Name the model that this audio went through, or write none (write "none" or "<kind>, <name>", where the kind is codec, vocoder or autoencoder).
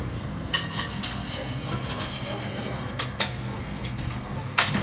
codec, SNAC